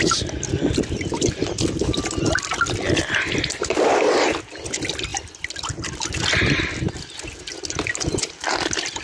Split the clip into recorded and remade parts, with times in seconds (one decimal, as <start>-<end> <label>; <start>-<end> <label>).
0.0-9.0 recorded